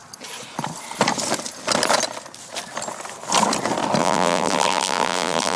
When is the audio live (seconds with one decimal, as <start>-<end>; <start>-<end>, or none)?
0.0-4.0